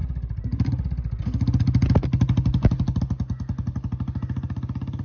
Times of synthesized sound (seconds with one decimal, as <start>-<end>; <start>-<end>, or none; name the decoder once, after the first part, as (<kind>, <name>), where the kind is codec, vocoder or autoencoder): none